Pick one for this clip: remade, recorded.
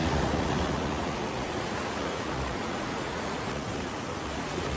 remade